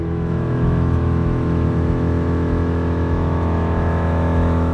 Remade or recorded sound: remade